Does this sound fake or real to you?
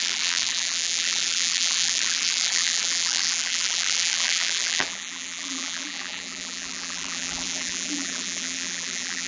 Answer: fake